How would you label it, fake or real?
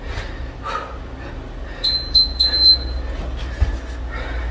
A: real